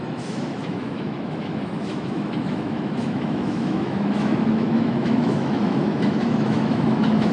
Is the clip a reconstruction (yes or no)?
yes